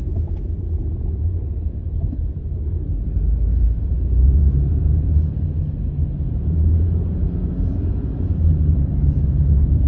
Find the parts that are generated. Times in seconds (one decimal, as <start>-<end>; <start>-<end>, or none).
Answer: 0.0-9.9